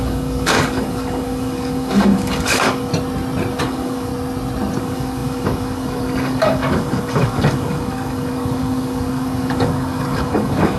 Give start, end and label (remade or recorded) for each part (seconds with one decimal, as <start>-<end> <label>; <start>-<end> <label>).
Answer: 0.0-2.9 remade; 2.9-3.6 recorded; 3.6-4.1 remade; 4.1-4.8 recorded; 4.8-10.8 remade